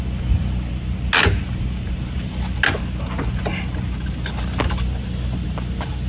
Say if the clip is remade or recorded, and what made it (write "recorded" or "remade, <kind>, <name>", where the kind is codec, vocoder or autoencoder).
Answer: recorded